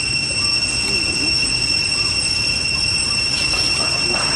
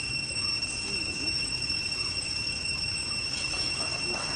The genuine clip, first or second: first